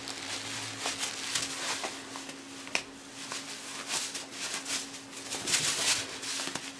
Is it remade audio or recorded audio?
recorded